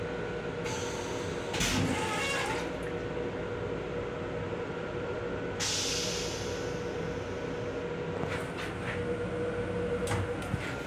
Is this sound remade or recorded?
recorded